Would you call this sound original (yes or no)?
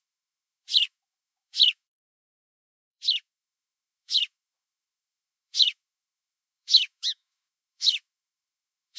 no